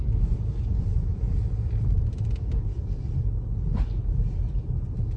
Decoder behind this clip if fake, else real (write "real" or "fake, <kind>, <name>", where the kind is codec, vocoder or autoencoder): real